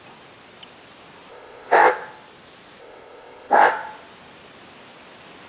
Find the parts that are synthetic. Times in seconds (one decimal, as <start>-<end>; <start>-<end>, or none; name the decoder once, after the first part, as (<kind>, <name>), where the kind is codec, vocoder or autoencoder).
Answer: 1.3-1.9 (codec, ZipCodec); 2.8-3.7